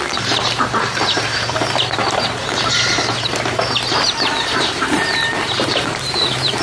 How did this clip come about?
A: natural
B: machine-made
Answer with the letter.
B